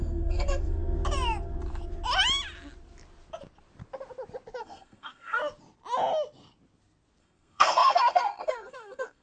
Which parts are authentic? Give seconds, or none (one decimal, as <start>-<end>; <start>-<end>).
0.8-4.6; 5.4-7.2